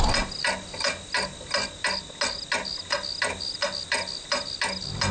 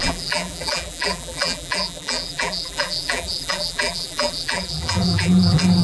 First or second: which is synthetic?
second